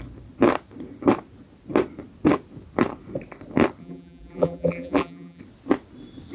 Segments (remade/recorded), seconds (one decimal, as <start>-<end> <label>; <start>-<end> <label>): 0.0-3.8 recorded; 3.8-5.4 remade; 5.4-6.3 recorded